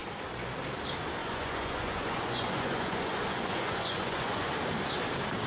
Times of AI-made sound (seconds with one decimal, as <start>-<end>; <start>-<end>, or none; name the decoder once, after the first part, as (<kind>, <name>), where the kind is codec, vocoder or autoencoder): 1.2-4.5 (vocoder, Vocos)